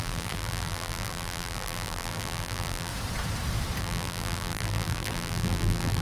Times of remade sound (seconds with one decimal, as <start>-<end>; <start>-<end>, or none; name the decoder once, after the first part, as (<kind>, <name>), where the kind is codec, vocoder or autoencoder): 0.0-2.9 (vocoder, BigVGAN v2); 3.8-6.0